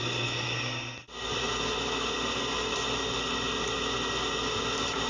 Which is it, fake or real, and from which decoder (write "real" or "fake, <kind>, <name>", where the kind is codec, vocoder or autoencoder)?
real